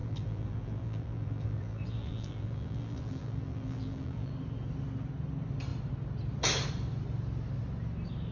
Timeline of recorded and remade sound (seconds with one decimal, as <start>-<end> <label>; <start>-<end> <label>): 0.0-4.3 remade; 4.3-8.3 recorded